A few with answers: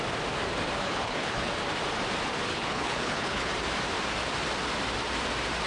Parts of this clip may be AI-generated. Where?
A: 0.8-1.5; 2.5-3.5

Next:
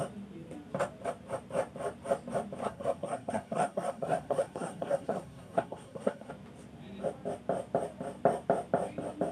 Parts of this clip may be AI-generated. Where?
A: 2.6-6.3